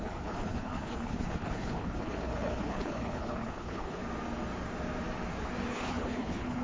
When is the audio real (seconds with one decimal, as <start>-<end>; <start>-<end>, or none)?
4.0-5.7